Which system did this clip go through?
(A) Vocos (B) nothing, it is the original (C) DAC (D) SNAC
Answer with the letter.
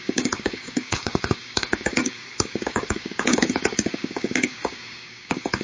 C